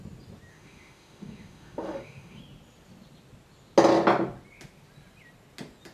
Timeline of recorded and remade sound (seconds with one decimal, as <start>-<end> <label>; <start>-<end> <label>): 0.0-0.5 recorded; 0.5-2.4 remade; 2.4-5.9 recorded